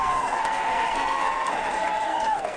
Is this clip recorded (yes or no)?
no